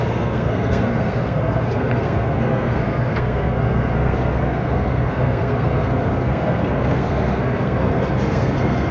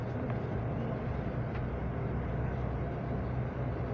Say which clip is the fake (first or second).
first